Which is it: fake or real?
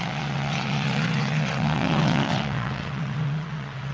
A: fake